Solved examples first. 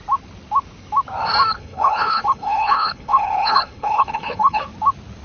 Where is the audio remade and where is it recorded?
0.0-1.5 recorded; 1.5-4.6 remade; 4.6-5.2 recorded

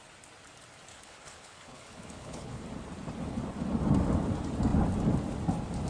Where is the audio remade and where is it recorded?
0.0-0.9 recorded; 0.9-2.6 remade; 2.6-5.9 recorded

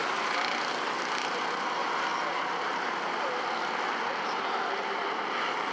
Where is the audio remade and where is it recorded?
0.0-5.7 recorded

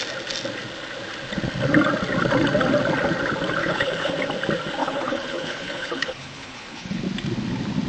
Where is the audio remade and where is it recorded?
0.0-3.6 recorded; 3.6-4.1 remade; 4.1-4.8 recorded; 4.8-7.0 remade; 7.0-7.9 recorded

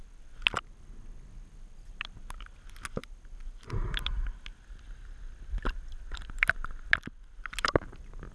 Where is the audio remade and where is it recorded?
0.0-8.3 recorded